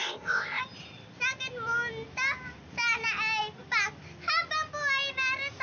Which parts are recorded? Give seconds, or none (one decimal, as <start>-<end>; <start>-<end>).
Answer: 0.6-5.6

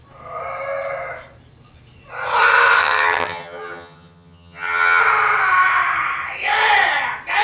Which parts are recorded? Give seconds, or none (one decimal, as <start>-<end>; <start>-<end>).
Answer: 0.0-2.8; 5.0-7.4

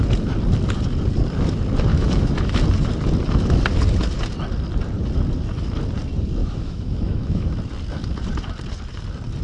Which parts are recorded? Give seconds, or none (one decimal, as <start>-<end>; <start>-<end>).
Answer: 0.0-1.9; 2.6-6.4; 7.4-9.4